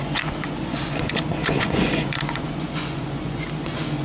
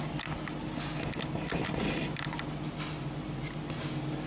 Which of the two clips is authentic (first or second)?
second